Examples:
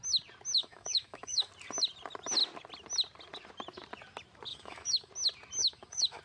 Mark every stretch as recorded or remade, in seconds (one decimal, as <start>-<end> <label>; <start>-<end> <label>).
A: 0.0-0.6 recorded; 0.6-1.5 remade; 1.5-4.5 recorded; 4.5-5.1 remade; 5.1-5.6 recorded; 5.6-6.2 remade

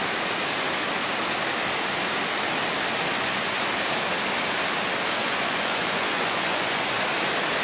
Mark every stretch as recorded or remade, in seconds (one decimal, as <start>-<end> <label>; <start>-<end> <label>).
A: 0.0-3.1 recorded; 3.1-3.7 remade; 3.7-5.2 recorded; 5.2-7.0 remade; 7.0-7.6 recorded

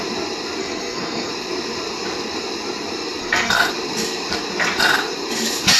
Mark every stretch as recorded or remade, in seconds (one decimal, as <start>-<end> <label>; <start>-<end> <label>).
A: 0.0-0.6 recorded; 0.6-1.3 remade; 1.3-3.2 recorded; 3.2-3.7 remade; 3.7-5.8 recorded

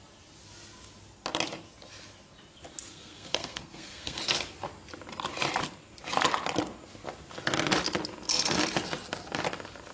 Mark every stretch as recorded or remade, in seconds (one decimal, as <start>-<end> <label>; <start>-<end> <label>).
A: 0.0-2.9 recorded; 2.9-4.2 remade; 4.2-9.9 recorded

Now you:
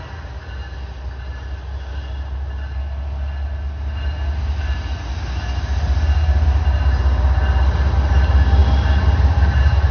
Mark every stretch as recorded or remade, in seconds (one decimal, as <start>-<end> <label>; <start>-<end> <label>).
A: 0.0-9.9 recorded

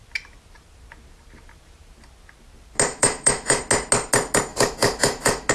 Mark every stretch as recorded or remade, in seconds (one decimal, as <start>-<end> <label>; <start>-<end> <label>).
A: 0.0-2.9 recorded; 2.9-3.6 remade; 3.6-4.5 recorded; 4.5-5.5 remade

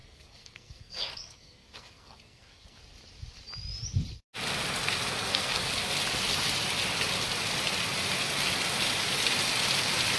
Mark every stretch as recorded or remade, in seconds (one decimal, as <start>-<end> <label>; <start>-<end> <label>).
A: 0.0-2.8 remade; 2.8-5.2 recorded; 5.2-5.9 remade; 5.9-10.2 recorded

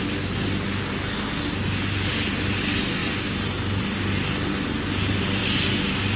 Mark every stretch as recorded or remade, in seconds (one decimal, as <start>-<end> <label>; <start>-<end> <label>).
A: 0.0-6.2 recorded